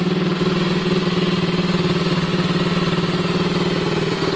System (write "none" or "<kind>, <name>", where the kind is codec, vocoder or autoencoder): none